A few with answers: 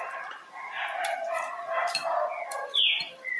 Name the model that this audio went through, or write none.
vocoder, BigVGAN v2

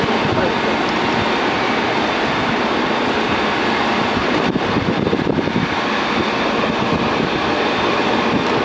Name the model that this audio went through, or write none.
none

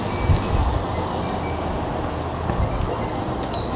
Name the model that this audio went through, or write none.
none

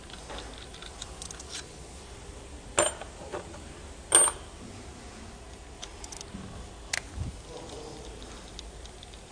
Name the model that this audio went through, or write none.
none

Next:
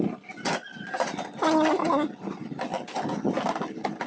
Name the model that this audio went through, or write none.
none